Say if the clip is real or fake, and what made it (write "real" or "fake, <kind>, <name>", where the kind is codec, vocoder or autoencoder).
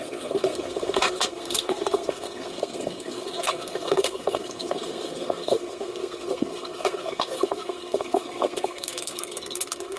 fake, codec, SNAC